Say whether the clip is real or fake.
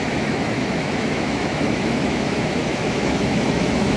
fake